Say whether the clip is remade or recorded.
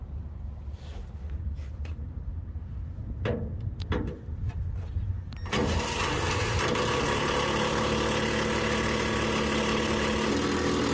recorded